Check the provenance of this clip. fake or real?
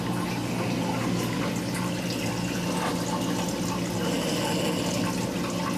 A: real